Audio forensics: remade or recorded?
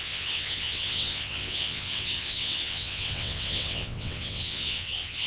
remade